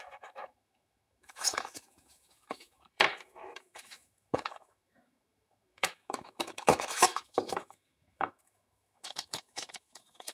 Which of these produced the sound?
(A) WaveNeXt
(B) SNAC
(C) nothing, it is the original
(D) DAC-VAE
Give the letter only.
D